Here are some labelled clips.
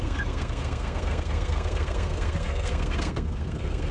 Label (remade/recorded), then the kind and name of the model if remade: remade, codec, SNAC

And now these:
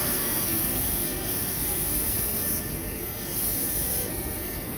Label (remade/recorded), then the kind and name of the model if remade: remade, codec, SNAC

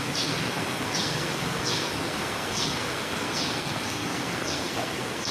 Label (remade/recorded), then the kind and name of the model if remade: remade, codec, SNAC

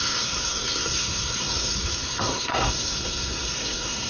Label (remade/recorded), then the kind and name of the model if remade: remade, codec, SNAC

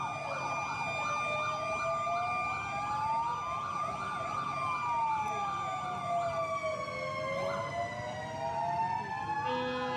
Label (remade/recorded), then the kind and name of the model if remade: recorded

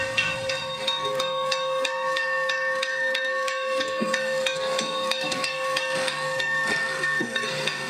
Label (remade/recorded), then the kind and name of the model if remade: remade, codec, SNAC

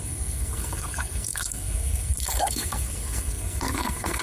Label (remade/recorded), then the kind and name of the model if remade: remade, codec, SNAC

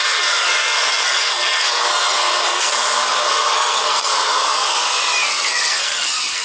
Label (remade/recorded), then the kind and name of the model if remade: remade, codec, SNAC